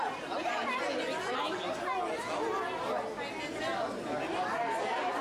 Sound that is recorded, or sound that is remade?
recorded